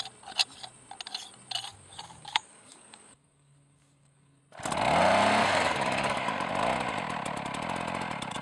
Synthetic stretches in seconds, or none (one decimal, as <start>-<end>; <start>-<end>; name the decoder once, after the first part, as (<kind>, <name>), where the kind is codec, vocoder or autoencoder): 1.7-4.4 (codec, DAC); 5.4-6.5